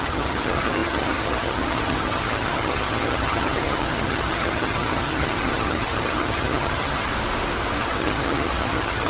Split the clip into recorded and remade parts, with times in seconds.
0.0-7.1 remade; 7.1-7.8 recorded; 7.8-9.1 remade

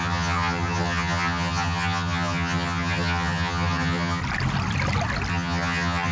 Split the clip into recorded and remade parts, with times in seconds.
0.0-4.2 remade; 4.2-5.3 recorded; 5.3-6.1 remade

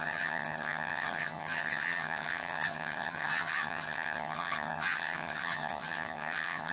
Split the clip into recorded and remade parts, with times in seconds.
0.0-6.7 remade

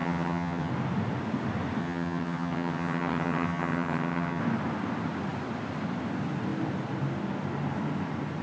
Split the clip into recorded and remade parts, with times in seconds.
0.0-0.7 remade; 0.7-1.8 recorded; 1.8-4.4 remade; 4.4-8.4 recorded

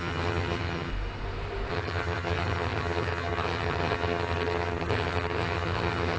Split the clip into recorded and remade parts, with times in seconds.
0.0-0.9 remade; 0.9-1.7 recorded; 1.7-6.2 remade

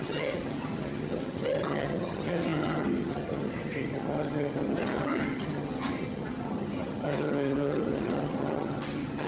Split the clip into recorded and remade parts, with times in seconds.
0.0-9.3 remade

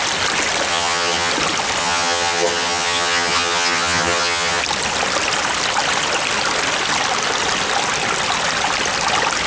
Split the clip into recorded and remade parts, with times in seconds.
0.0-0.7 recorded; 0.7-1.3 remade; 1.3-1.8 recorded; 1.8-4.6 remade; 4.6-9.5 recorded